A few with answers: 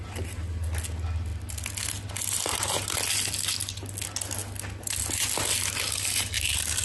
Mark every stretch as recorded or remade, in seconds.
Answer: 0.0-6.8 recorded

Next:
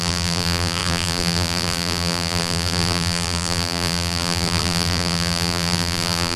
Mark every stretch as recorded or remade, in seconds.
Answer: 0.0-6.4 remade

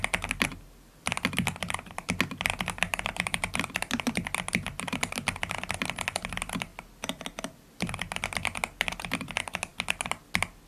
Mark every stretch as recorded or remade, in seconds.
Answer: 0.0-2.9 recorded; 2.9-3.8 remade; 3.8-10.7 recorded

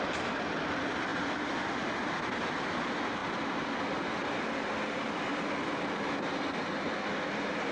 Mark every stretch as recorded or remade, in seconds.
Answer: 0.0-7.7 recorded

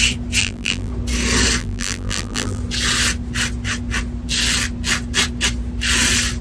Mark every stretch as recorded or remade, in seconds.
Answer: 0.0-0.4 recorded; 0.4-0.9 remade; 0.9-1.6 recorded; 1.6-2.6 remade; 2.6-6.4 recorded

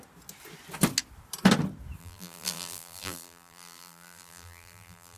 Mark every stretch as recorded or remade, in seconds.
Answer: 0.0-2.0 recorded; 2.0-5.2 remade

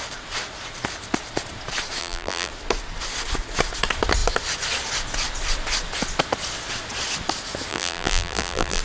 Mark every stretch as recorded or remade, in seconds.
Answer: 0.0-2.0 recorded; 2.0-2.5 remade; 2.5-7.7 recorded; 7.7-8.8 remade

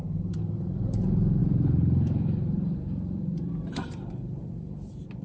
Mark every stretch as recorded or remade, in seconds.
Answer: 0.0-5.2 remade